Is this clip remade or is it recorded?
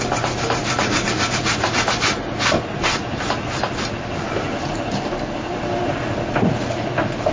recorded